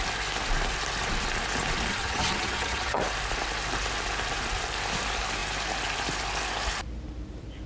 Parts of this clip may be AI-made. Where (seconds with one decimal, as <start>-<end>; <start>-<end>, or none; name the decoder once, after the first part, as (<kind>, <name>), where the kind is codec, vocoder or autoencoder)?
1.9-3.0 (vocoder, HiFi-GAN)